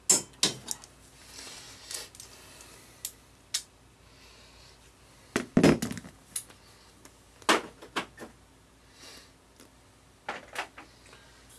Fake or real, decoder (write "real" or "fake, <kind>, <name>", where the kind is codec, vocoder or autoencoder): real